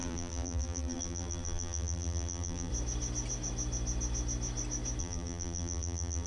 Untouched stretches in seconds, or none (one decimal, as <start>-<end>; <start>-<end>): 2.7-5.0